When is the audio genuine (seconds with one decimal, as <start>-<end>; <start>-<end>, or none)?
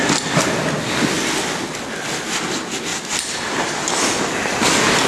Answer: 0.0-2.9; 3.9-5.1